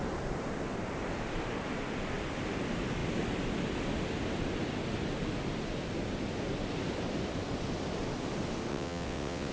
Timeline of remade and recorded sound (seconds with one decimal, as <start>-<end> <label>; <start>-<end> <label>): 0.0-8.7 recorded; 8.7-9.5 remade